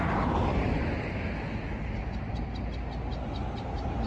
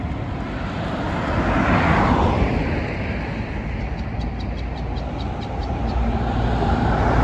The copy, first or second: second